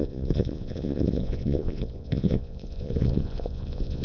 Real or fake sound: fake